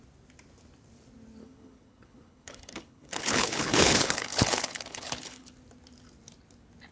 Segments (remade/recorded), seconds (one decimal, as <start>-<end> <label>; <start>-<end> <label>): 0.0-1.4 recorded; 1.4-5.5 remade; 5.5-6.9 recorded